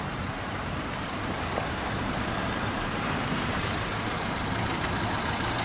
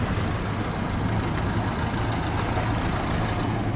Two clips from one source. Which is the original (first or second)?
second